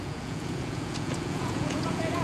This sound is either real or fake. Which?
fake